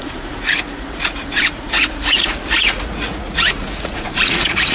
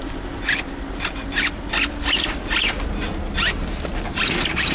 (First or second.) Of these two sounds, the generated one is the first